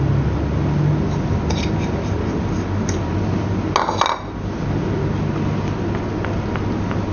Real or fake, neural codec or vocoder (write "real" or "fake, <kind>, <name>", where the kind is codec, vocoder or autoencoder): real